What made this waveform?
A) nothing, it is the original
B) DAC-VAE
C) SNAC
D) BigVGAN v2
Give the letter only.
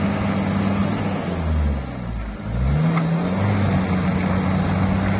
A